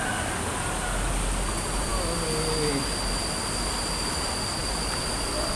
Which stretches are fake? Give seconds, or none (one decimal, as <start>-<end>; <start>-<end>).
none